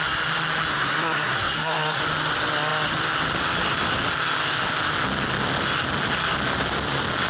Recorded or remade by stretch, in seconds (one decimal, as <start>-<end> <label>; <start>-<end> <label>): 0.0-0.7 recorded; 0.7-2.0 remade; 2.0-7.3 recorded